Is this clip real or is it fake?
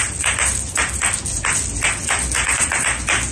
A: real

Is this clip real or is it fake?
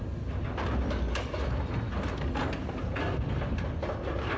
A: real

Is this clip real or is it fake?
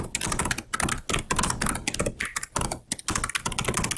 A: real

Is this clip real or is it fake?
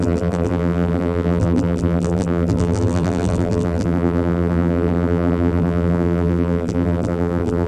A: fake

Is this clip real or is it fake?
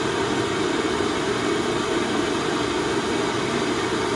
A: real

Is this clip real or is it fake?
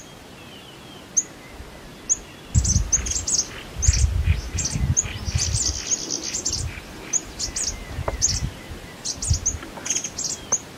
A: real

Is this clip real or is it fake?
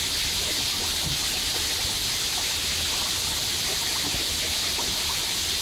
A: real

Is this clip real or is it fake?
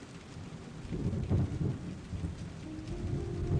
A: real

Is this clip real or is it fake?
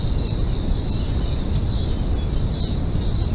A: real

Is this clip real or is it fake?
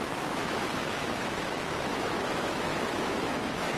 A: fake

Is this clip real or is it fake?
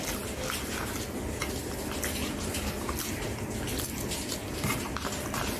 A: real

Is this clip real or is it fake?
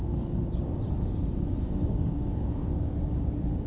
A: fake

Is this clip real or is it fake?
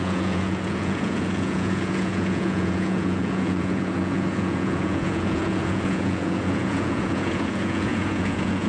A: fake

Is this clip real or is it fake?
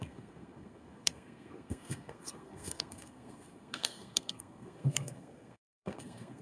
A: fake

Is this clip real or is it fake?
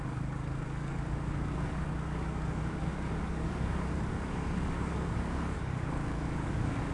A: fake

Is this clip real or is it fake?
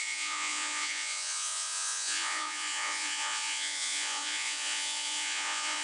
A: fake